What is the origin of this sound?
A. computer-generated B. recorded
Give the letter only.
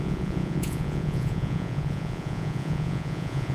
A